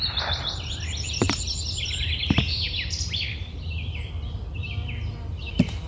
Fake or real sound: fake